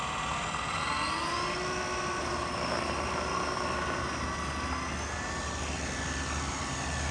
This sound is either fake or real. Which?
real